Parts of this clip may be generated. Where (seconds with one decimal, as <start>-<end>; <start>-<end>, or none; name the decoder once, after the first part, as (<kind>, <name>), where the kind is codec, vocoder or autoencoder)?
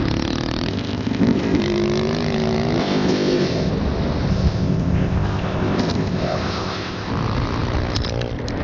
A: 0.7-1.6 (codec, ZipCodec); 2.8-3.7; 4.3-7.1